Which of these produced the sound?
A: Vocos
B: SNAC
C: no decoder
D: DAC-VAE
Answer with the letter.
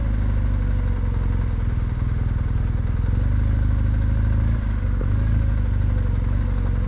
C